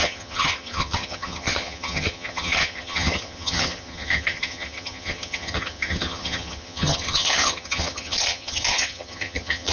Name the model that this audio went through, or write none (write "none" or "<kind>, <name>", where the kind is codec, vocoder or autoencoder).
vocoder, HiFi-GAN